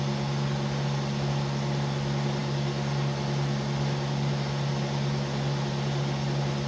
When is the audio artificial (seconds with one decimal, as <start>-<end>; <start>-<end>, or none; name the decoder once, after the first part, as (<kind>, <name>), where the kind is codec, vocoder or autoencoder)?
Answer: none